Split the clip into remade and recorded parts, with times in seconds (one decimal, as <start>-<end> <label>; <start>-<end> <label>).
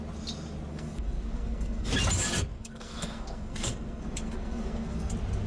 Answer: 0.0-0.7 recorded; 0.7-1.9 remade; 1.9-2.5 recorded; 2.5-5.1 remade; 5.1-5.5 recorded